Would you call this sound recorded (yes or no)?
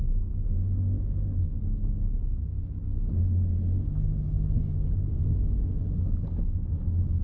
yes